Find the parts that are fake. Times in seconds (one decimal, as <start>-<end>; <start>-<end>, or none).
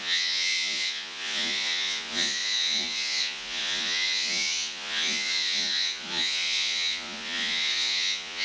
0.0-8.4